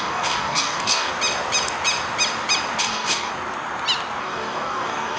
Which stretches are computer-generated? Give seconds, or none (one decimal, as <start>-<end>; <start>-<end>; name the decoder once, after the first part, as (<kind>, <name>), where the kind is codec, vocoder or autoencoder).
0.0-1.1 (codec, DAC); 2.8-3.3; 4.2-5.2